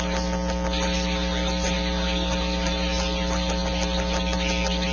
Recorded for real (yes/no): yes